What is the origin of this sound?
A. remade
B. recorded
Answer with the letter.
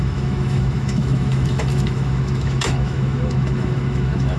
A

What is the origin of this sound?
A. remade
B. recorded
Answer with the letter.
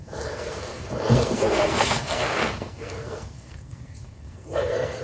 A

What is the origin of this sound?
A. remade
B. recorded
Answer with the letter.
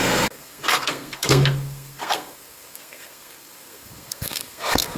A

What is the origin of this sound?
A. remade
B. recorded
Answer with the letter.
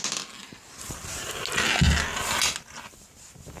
B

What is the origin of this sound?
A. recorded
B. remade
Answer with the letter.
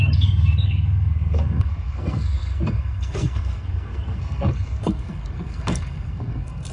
B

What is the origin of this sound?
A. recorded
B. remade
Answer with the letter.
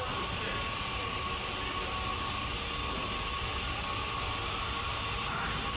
A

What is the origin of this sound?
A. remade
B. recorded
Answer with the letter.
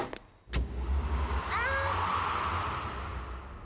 B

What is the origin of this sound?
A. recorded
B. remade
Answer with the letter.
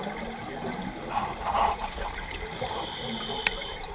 A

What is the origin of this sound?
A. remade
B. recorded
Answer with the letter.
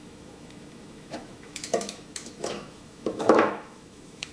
A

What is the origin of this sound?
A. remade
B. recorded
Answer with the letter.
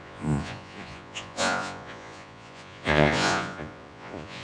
A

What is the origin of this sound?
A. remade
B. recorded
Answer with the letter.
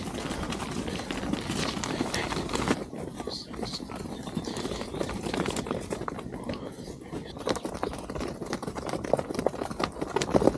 B